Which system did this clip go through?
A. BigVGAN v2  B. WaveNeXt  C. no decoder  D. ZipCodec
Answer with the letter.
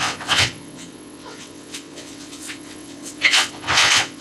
B